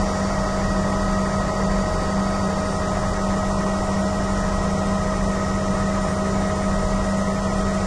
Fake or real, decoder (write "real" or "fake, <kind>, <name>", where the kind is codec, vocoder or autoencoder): real